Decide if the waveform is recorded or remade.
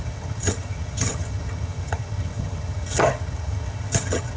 remade